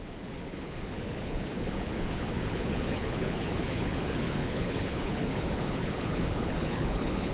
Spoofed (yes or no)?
yes